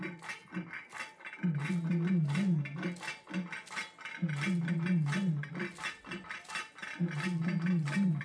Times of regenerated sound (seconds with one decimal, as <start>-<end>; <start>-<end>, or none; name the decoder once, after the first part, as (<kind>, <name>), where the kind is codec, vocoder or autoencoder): none